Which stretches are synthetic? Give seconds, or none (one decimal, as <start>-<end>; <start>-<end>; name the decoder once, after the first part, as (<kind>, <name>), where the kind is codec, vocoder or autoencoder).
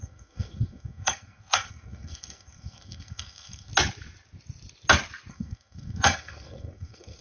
0.0-3.7 (codec, SNAC); 5.3-7.2